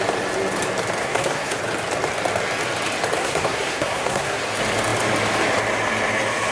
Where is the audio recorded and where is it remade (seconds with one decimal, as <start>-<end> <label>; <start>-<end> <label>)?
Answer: 0.0-1.0 recorded; 1.0-1.6 remade; 1.6-3.2 recorded; 3.2-4.4 remade; 4.4-6.5 recorded